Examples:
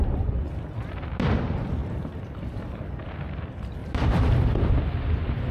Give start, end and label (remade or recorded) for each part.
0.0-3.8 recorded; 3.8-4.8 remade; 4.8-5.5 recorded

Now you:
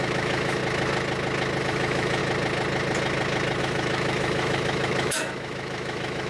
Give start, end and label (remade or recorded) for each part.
0.0-0.6 remade; 0.6-1.6 recorded; 1.6-2.2 remade; 2.2-3.6 recorded; 3.6-6.3 remade

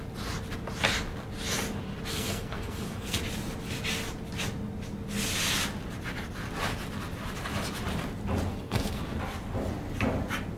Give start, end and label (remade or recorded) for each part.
0.0-2.1 recorded; 2.1-3.2 remade; 3.2-8.5 recorded; 8.5-9.0 remade; 9.0-10.6 recorded

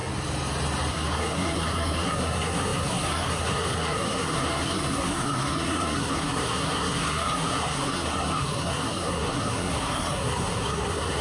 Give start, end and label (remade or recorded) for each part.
0.0-0.9 recorded; 0.9-11.2 remade

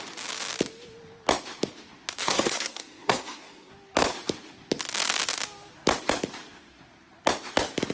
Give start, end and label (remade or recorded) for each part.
0.0-2.2 recorded; 2.2-3.7 remade; 3.7-7.9 recorded